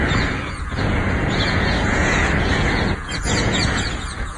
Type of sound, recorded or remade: remade